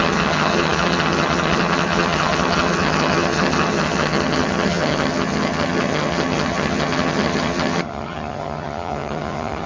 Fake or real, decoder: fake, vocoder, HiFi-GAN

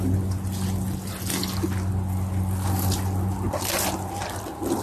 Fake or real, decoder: real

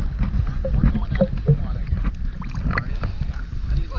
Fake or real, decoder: real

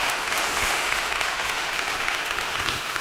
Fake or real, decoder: fake, autoencoder, DAC-VAE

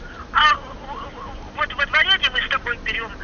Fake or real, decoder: real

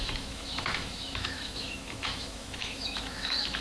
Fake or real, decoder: fake, autoencoder, DAC-VAE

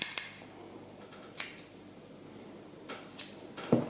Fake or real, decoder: real